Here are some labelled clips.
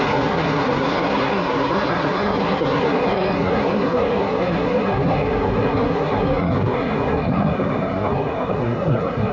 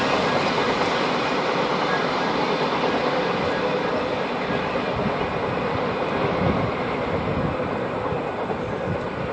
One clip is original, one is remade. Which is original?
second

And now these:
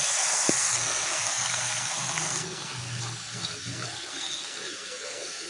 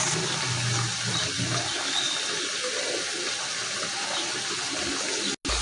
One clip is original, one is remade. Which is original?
second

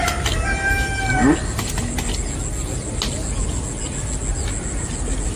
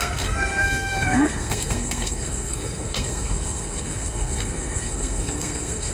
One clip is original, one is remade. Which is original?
first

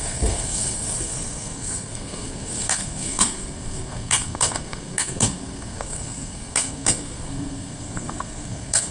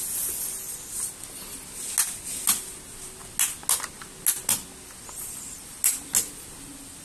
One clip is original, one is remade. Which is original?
second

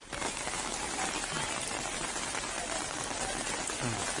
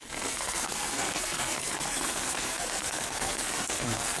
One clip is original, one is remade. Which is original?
first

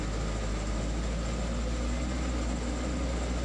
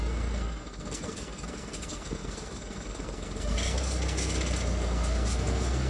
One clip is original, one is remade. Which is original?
first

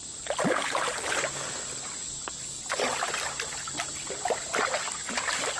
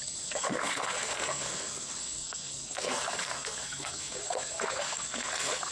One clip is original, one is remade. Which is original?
first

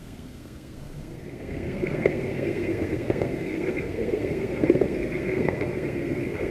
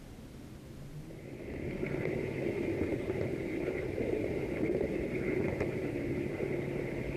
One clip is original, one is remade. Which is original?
second